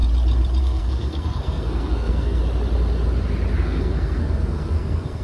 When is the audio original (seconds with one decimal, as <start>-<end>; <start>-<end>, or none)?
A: 0.0-0.6; 2.4-3.6